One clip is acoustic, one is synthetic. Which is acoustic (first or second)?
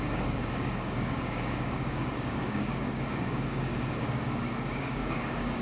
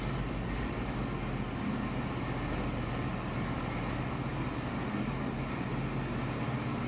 second